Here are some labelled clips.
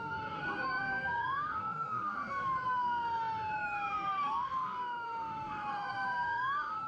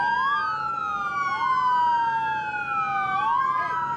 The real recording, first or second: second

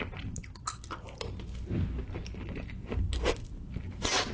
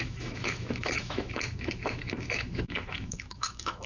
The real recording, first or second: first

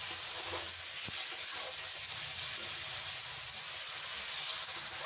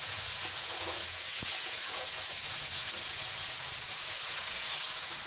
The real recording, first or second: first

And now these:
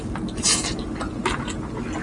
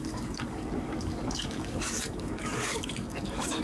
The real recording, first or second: first